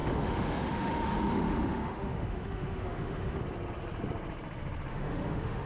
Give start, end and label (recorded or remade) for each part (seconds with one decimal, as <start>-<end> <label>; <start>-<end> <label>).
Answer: 0.0-3.4 remade; 3.4-4.9 recorded; 4.9-5.7 remade